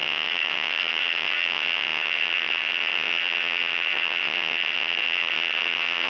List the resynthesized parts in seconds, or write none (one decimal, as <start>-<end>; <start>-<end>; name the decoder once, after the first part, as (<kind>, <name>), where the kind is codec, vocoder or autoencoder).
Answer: 0.0-6.1 (vocoder, HiFi-GAN)